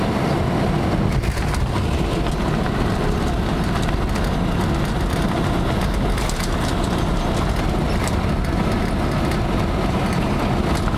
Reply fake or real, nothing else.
real